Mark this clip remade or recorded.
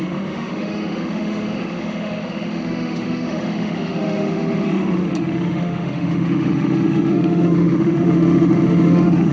remade